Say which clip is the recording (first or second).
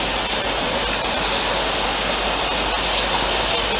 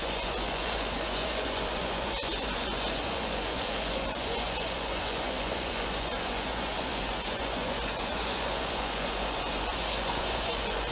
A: first